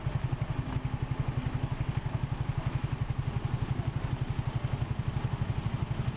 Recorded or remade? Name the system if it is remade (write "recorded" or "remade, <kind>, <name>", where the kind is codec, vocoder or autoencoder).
recorded